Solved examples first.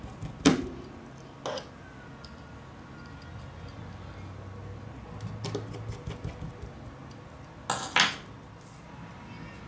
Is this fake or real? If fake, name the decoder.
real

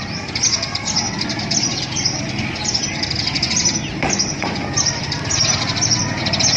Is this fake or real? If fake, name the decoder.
real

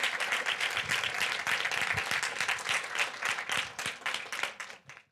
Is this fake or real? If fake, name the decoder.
real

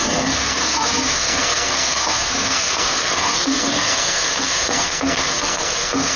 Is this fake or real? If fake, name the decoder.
fake, codec, SNAC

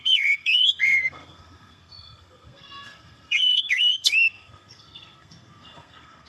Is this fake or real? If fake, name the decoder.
fake, codec, SNAC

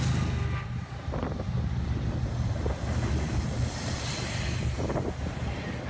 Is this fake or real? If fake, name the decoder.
real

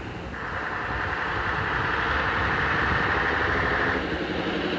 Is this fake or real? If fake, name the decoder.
real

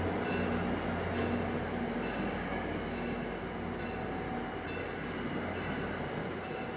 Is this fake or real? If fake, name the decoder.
real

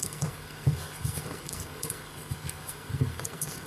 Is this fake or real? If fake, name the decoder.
fake, codec, SNAC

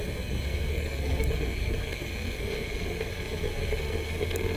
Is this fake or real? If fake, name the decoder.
fake, codec, SNAC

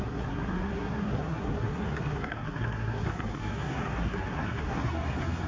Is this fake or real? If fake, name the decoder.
fake, codec, SNAC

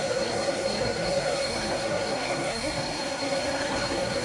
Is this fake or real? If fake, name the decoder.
fake, codec, SNAC